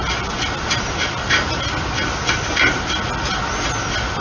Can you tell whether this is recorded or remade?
recorded